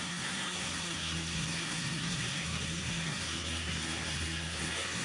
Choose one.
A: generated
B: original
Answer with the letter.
A